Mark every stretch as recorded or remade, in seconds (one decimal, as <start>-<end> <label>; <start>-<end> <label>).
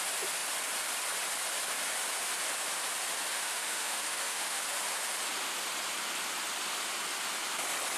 0.0-3.3 recorded; 3.3-4.6 remade; 4.6-8.0 recorded